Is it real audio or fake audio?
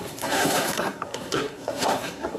fake